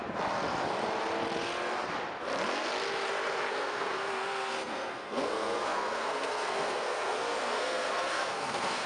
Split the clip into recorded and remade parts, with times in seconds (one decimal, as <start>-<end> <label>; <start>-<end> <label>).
0.0-3.5 recorded; 3.5-8.9 remade